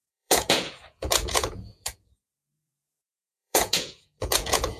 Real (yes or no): no